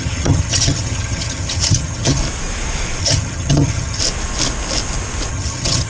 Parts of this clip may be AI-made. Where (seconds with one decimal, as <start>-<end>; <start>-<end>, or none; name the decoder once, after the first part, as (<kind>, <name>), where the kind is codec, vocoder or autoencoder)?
0.0-2.2 (vocoder, HiFi-GAN); 3.0-4.0; 5.3-5.9